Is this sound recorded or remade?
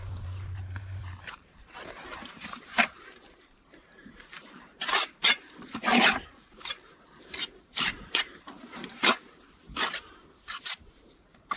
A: remade